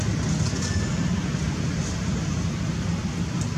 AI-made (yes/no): no